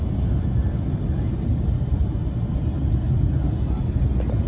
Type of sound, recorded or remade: recorded